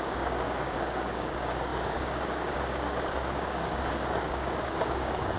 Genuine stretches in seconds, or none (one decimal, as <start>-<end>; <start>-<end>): none